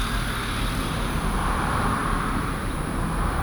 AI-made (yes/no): no